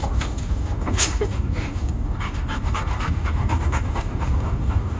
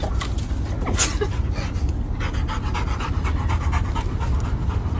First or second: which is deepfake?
first